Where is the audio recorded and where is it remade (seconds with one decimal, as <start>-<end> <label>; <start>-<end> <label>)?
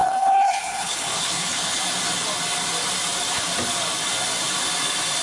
0.0-1.8 remade; 1.8-5.2 recorded